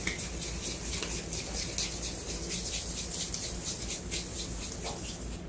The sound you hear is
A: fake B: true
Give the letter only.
B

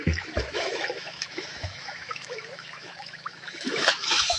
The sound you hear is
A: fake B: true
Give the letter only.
A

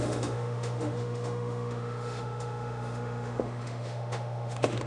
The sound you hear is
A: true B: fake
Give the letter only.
B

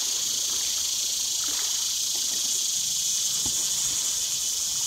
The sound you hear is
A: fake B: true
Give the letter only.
B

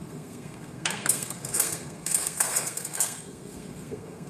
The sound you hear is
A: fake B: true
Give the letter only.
A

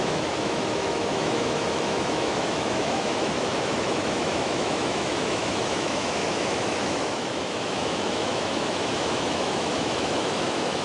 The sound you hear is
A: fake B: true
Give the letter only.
A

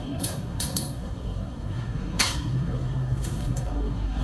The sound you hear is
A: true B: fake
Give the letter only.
B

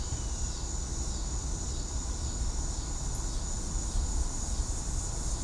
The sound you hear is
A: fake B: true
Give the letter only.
B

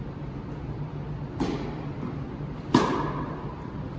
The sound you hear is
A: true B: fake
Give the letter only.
A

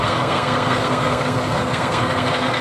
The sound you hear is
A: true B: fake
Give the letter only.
B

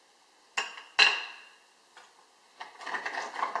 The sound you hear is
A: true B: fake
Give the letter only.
A